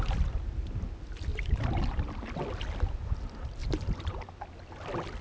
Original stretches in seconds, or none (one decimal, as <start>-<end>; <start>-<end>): 0.0-1.3; 2.0-3.6; 4.2-5.2